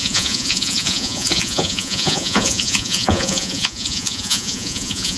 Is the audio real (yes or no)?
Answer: no